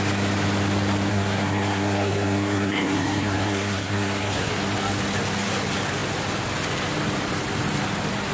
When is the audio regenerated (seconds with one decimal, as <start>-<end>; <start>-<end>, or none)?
1.1-4.5